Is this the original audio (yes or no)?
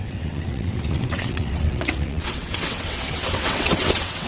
no